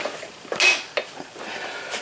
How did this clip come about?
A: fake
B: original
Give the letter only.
B